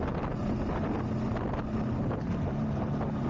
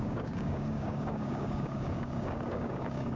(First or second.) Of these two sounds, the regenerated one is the second